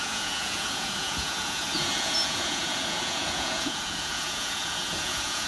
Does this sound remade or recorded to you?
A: remade